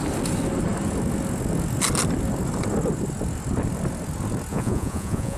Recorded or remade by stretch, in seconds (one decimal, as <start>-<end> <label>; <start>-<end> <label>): 0.0-4.5 recorded; 4.5-5.4 remade